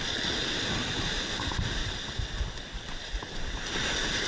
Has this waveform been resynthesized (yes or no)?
no